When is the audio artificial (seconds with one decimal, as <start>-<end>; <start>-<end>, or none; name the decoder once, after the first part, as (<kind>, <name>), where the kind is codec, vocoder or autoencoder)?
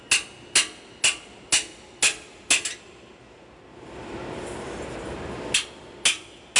none